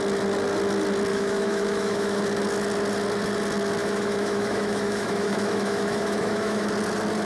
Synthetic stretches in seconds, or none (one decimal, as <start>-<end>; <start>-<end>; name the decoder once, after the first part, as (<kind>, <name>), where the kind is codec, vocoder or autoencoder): 1.1-2.2 (autoencoder, DAC-VAE); 3.8-6.7